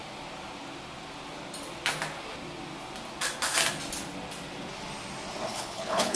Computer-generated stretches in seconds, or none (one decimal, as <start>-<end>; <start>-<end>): 5.5-6.2